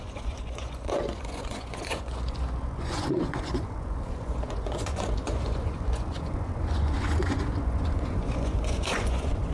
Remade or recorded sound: remade